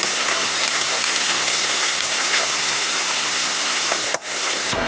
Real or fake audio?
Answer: fake